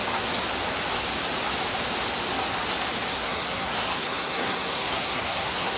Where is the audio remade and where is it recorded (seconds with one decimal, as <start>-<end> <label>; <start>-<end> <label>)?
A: 0.0-3.1 recorded; 3.1-5.8 remade